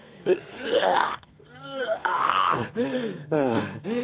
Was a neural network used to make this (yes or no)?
yes